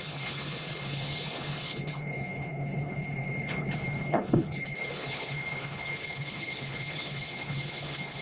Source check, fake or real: fake